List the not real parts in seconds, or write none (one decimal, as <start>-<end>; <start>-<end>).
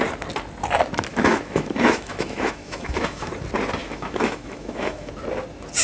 1.1-3.3; 3.8-5.1